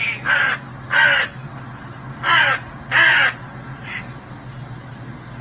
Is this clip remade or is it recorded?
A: recorded